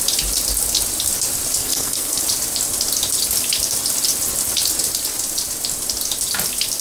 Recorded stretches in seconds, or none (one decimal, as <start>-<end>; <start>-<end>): 0.0-1.6; 2.2-6.8